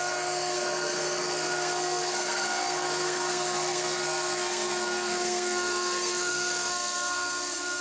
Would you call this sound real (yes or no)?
no